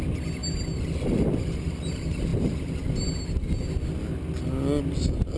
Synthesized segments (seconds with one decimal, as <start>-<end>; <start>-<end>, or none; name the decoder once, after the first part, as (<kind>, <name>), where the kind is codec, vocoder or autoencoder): none